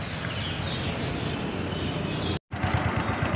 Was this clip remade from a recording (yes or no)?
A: no